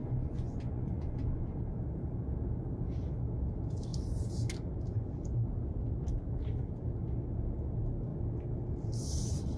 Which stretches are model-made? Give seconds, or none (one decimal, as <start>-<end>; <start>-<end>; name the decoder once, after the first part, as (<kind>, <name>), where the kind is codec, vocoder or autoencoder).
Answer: 0.0-1.6 (vocoder, Vocos)